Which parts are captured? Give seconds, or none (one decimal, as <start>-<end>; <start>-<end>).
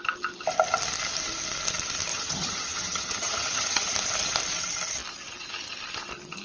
0.0-2.1; 3.9-6.4